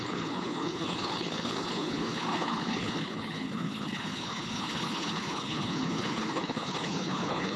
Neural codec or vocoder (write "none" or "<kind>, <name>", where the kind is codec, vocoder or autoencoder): codec, HILCodec